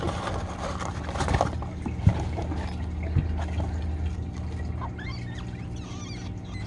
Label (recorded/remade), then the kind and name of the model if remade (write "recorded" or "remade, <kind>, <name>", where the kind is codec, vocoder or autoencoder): recorded